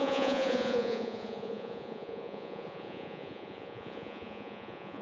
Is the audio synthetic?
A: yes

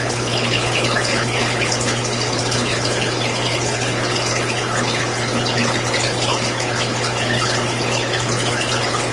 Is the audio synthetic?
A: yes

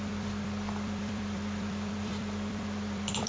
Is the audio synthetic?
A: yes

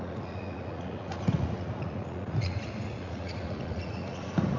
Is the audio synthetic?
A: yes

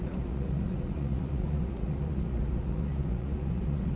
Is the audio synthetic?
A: yes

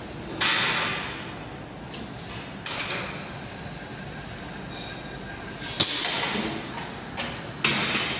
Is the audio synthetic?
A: no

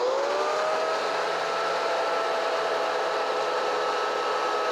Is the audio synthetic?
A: no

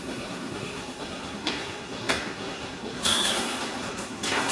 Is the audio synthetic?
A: yes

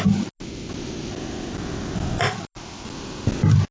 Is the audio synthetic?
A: no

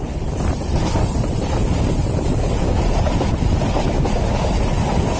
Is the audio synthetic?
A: no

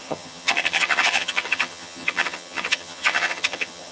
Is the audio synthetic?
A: yes